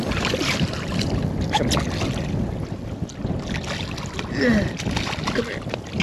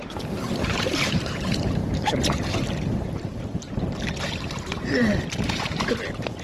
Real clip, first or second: first